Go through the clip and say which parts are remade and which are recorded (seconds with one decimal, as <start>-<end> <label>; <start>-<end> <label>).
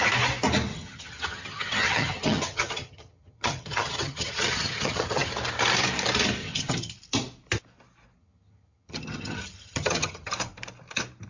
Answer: 0.0-0.7 recorded; 0.7-5.3 remade; 5.3-6.4 recorded; 6.4-6.9 remade; 6.9-8.2 recorded; 8.2-10.3 remade; 10.3-11.3 recorded